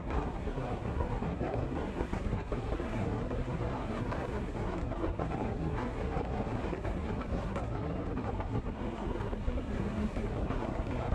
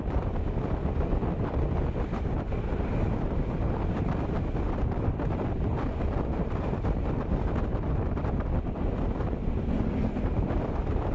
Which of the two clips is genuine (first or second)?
second